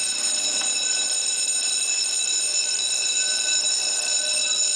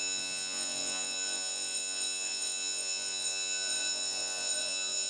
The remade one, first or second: second